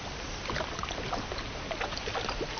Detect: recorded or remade recorded